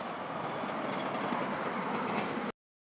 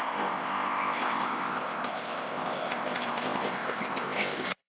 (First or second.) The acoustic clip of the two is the first